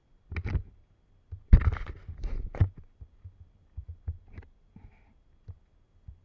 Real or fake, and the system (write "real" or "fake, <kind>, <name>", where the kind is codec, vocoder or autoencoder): real